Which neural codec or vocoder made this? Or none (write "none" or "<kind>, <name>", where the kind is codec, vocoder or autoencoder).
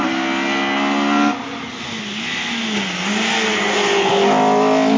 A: none